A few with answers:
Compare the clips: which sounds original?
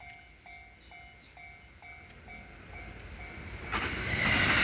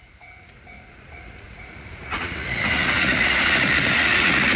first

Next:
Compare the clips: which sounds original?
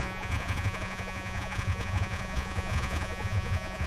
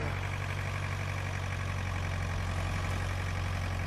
second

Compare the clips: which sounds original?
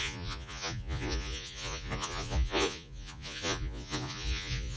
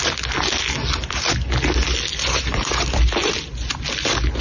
second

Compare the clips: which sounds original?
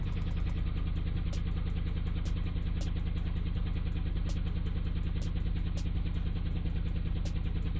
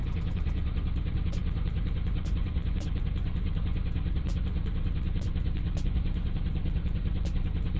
first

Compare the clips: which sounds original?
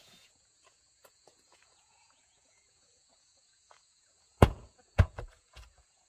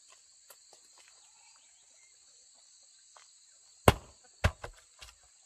second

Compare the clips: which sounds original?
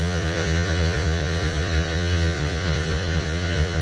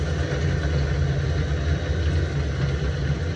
second